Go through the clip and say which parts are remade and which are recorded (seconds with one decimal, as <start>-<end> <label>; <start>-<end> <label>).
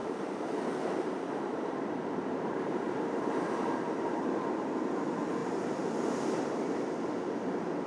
0.0-4.7 remade; 4.7-7.9 recorded